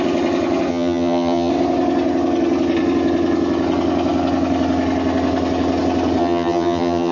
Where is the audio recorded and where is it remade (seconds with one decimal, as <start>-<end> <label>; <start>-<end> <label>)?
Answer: 0.0-0.7 recorded; 0.7-1.5 remade; 1.5-6.2 recorded; 6.2-7.1 remade